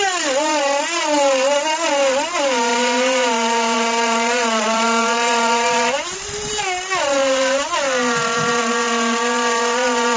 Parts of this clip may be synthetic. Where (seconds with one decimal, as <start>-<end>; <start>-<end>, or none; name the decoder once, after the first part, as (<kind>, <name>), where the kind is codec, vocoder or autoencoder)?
2.7-6.5 (vocoder, BigVGAN v2); 7.2-7.7